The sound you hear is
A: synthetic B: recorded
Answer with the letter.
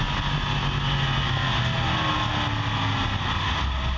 B